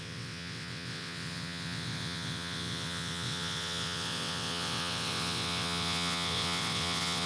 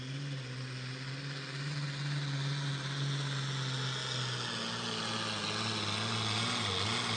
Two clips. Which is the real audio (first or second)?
second